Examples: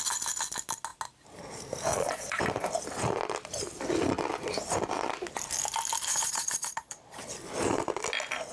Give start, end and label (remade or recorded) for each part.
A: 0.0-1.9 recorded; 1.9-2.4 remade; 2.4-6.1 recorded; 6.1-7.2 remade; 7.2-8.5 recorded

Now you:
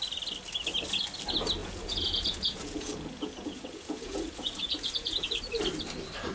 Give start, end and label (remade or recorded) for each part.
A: 0.0-1.6 recorded; 1.6-5.4 remade; 5.4-6.3 recorded

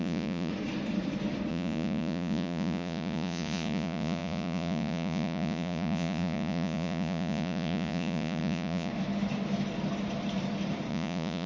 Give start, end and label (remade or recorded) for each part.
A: 0.0-0.5 remade; 0.5-1.5 recorded; 1.5-8.9 remade; 8.9-10.9 recorded; 10.9-11.5 remade

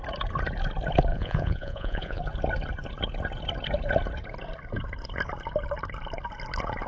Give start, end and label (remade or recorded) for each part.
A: 0.0-1.1 recorded; 1.1-2.2 remade; 2.2-6.9 recorded

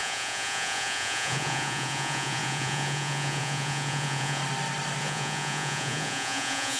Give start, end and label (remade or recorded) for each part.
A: 0.0-4.4 remade; 4.4-5.0 recorded; 5.0-6.8 remade

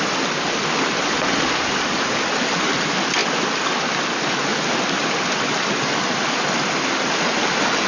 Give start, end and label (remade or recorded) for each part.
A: 0.0-7.9 recorded

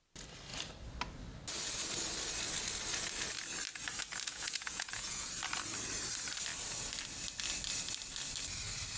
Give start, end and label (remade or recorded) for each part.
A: 0.0-4.3 recorded; 4.3-5.3 remade; 5.3-9.0 recorded

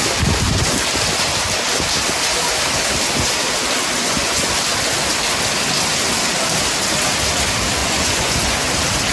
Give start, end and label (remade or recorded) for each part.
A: 0.0-4.0 recorded; 4.0-4.5 remade; 4.5-7.8 recorded; 7.8-8.7 remade; 8.7-9.1 recorded